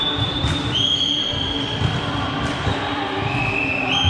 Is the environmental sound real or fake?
fake